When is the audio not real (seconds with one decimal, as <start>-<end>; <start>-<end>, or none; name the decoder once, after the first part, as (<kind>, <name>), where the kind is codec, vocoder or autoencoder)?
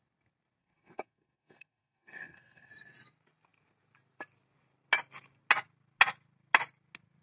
0.6-2.7 (codec, SNAC)